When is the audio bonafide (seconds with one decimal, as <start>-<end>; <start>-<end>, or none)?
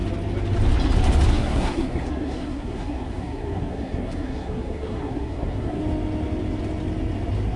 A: 0.0-1.3; 5.8-7.6